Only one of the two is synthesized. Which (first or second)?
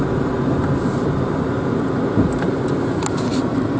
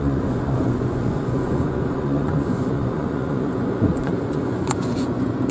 second